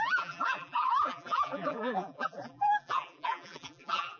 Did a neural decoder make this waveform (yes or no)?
yes